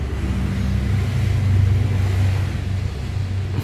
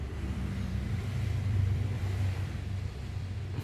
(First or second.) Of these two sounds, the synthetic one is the second